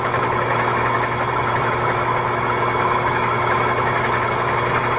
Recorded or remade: remade